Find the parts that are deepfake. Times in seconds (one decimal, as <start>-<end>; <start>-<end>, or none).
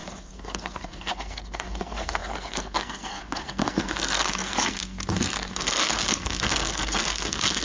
0.0-7.6